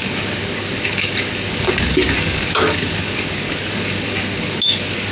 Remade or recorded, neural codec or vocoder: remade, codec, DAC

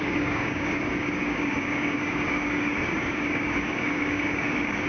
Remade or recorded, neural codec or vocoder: remade, codec, DAC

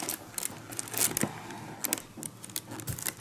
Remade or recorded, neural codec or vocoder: recorded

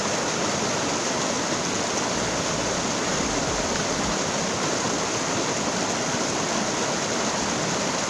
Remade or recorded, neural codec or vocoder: recorded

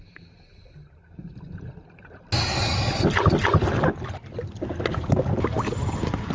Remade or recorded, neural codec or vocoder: recorded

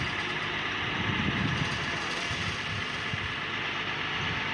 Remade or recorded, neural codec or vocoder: recorded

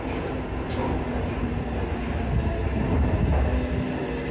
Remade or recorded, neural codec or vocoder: recorded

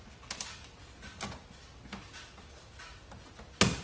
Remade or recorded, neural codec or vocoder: recorded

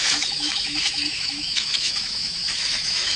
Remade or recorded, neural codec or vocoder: remade, autoencoder, DAC-VAE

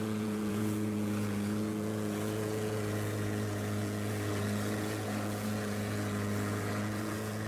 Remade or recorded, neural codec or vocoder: remade, vocoder, Vocos